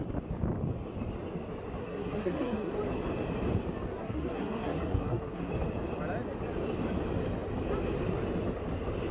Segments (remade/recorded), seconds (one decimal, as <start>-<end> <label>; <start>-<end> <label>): 0.0-1.8 recorded; 1.8-2.7 remade; 2.7-4.0 recorded; 4.0-5.5 remade; 5.5-9.1 recorded